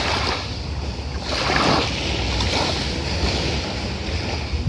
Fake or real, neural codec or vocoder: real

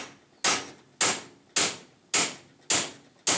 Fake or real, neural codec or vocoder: real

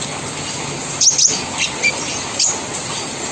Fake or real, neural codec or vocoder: real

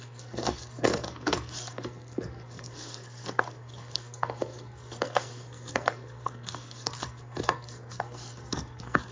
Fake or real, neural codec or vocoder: fake, codec, SNAC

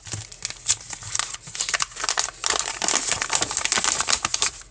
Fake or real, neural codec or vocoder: real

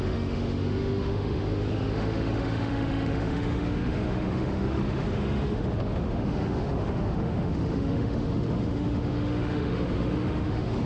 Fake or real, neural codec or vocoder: fake, autoencoder, DAC-VAE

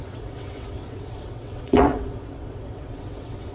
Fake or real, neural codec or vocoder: fake, vocoder, WaveNeXt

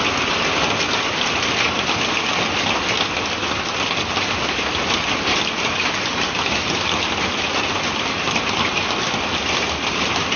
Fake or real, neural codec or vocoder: real